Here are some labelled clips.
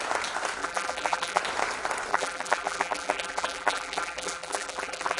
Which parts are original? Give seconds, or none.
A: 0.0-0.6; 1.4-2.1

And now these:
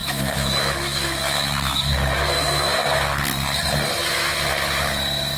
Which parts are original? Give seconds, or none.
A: 3.2-4.0; 4.5-5.4

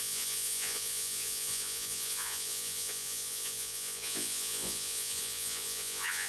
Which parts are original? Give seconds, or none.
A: none

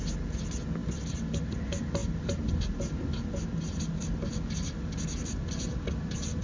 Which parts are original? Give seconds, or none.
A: 0.0-6.4